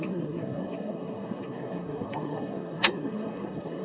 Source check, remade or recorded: remade